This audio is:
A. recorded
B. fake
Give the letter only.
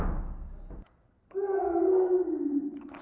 A